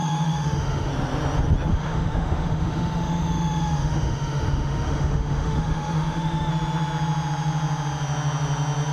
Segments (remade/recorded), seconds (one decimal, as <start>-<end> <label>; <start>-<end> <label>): 0.0-0.9 remade; 0.9-1.7 recorded; 1.7-6.5 remade; 6.5-8.9 recorded